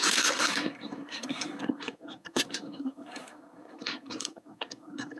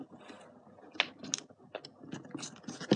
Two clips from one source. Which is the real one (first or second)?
second